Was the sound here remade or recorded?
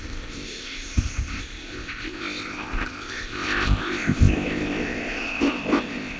remade